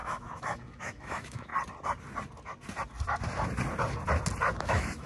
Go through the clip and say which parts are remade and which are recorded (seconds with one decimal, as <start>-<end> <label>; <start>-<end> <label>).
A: 0.0-1.5 remade; 1.5-4.6 recorded; 4.6-5.1 remade